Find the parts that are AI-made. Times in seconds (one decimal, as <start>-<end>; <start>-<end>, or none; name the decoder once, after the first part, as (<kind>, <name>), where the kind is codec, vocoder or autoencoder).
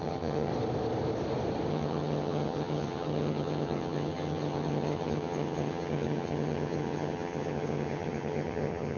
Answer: 0.0-0.5 (vocoder, HiFi-GAN); 1.7-9.0